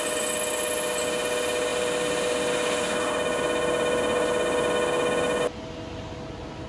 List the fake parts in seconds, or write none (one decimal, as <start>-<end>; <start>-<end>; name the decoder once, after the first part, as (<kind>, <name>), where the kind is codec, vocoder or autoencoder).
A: none